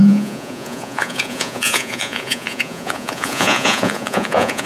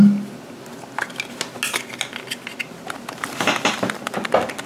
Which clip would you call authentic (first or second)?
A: second